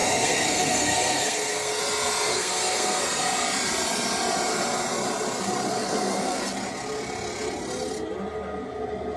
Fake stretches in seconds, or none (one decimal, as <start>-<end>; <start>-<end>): 0.0-1.8; 2.3-3.0; 5.7-6.4